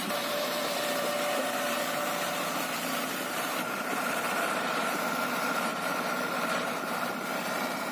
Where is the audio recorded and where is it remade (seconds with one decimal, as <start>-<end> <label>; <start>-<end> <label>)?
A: 0.0-7.9 remade